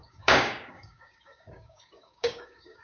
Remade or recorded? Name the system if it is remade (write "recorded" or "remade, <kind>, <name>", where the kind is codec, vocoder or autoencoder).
remade, codec, DAC